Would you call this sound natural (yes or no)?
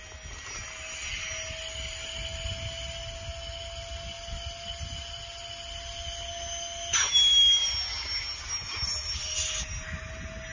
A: yes